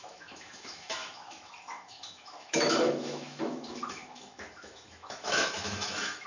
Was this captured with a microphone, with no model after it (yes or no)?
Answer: no